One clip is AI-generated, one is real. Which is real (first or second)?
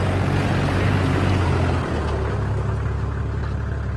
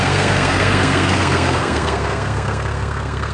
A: first